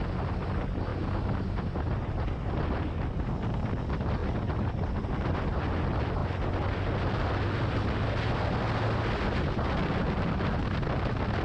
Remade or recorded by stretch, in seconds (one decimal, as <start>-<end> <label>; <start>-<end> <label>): 0.0-11.4 recorded